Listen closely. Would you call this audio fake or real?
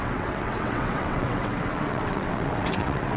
fake